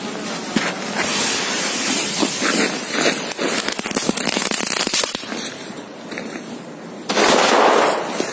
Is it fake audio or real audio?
real